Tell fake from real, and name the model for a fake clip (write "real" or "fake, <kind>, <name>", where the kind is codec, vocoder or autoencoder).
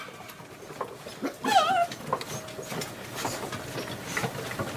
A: real